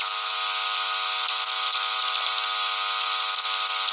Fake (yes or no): no